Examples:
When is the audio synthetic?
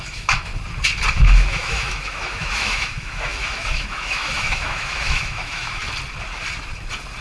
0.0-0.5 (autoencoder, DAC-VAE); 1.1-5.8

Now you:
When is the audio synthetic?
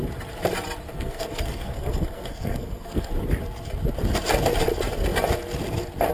0.9-3.1 (codec, SNAC)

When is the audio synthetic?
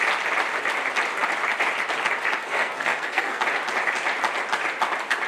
2.4-3.4 (codec, SNAC)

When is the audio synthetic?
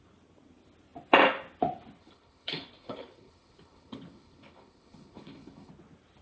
2.0-5.7 (codec, HILCodec)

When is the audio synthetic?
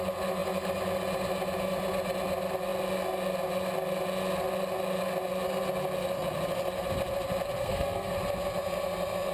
7.6-8.2 (codec, SNAC)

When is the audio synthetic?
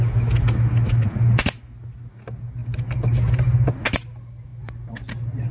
none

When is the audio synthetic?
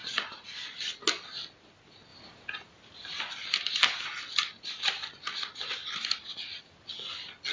0.0-0.8 (vocoder, Vocos)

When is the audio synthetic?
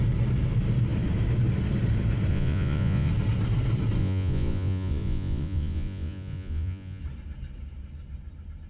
2.3-3.1 (vocoder, Vocos); 4.0-7.0